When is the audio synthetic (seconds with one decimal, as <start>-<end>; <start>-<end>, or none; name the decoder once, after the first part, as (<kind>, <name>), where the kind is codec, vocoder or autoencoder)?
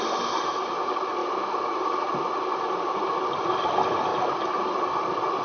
none